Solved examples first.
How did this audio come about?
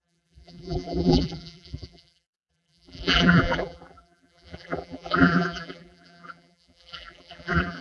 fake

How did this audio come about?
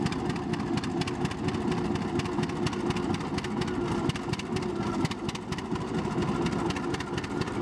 real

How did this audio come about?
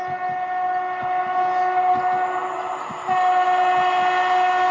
real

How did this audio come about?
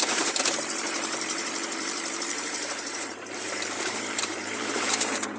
fake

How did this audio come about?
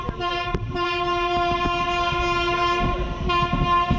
real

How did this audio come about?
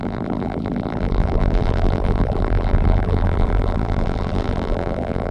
fake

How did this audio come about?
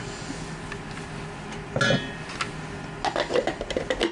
real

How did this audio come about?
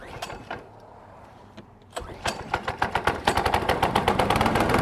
fake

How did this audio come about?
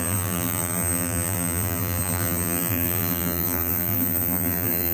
fake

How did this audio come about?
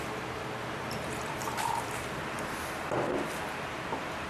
fake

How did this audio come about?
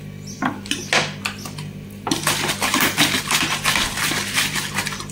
real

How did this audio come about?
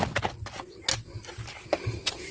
real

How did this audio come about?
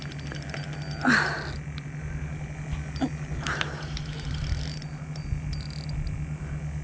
real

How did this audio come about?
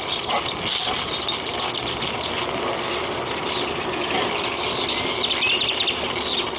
real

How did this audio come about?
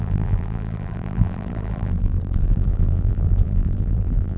fake